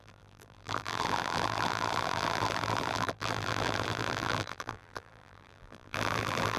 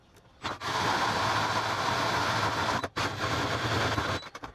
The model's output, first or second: first